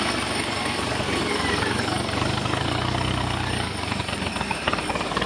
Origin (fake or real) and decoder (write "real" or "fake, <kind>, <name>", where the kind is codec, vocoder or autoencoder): fake, codec, DAC